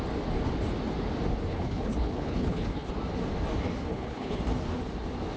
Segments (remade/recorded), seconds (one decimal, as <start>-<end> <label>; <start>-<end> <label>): 0.0-1.5 recorded; 1.5-2.9 remade; 2.9-3.9 recorded; 3.9-4.4 remade; 4.4-5.4 recorded